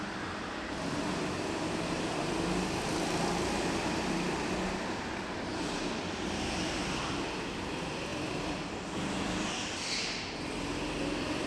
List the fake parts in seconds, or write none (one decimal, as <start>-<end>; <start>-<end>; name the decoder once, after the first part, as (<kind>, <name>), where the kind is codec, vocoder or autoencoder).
none